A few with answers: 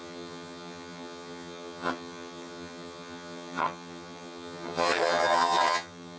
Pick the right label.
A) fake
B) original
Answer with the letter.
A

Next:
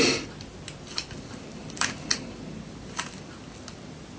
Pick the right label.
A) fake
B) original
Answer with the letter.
B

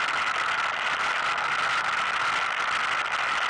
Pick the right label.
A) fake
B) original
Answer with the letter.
B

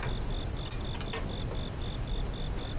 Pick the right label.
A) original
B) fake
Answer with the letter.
A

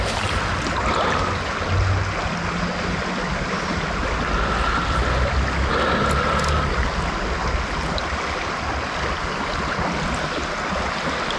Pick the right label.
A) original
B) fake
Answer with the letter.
A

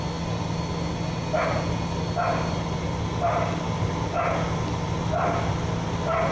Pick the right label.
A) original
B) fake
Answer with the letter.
A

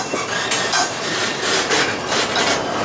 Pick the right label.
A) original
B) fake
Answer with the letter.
A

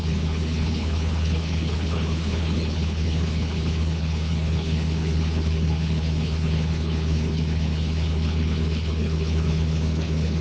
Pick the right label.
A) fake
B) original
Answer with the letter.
A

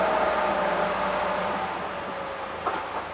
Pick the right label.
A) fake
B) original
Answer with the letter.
B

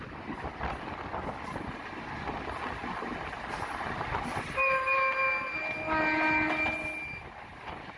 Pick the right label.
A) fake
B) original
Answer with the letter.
B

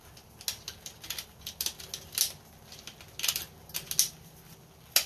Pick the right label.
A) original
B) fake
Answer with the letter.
A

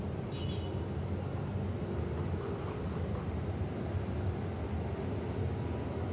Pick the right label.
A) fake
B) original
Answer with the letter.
B